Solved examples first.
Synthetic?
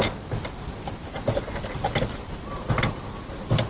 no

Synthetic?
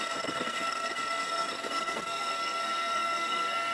yes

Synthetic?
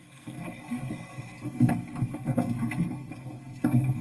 yes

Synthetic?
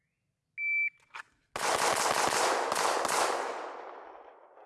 no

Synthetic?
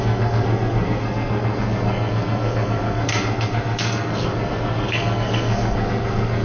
yes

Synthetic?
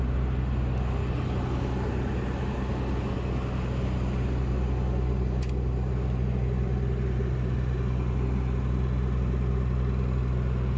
no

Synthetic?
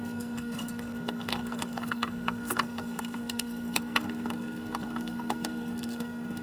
yes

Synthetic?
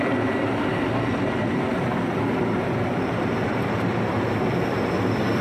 no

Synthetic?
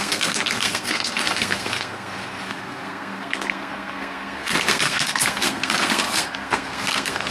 yes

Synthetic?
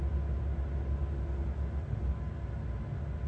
no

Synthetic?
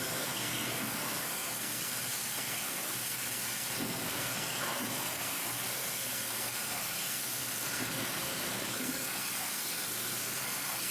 yes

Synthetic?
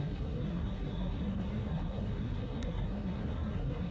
yes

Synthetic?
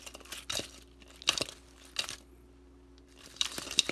no